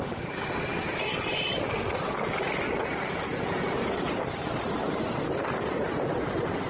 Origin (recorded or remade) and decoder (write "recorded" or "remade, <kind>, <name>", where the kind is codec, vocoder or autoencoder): recorded